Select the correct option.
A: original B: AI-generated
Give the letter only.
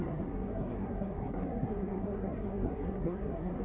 B